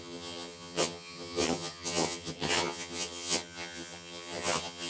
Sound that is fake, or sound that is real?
fake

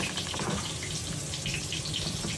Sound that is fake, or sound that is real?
real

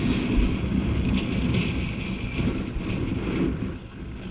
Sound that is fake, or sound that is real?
real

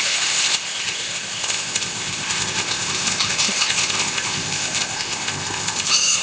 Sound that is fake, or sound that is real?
fake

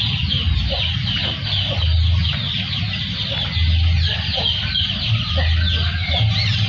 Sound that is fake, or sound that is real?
real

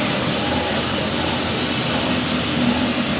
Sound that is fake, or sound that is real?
real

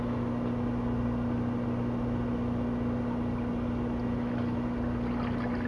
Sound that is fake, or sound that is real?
real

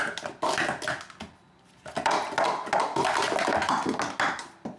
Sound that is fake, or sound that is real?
real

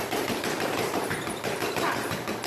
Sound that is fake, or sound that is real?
fake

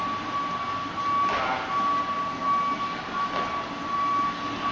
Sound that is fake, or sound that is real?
real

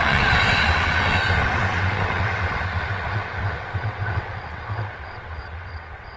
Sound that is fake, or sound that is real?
fake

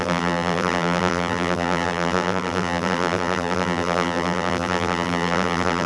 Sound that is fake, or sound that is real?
fake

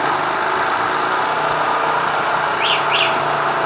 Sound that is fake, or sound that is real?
real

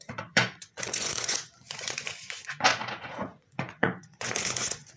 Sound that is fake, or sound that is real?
fake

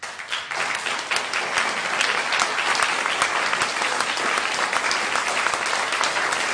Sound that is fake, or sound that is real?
real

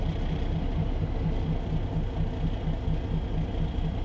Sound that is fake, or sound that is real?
real